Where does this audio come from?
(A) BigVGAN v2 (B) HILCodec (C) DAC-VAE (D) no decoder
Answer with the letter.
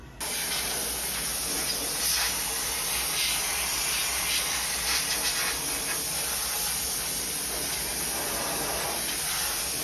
D